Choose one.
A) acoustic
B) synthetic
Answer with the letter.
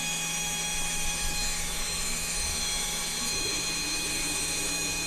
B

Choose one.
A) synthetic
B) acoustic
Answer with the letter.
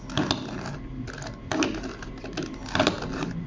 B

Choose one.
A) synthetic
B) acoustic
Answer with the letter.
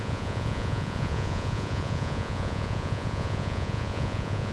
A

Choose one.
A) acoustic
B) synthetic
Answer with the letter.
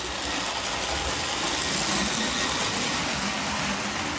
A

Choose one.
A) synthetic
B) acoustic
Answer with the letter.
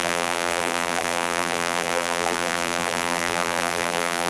A